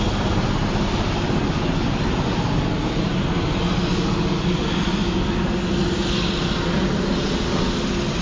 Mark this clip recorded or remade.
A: recorded